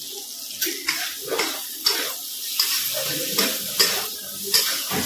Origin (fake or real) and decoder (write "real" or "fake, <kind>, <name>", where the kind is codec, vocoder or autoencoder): real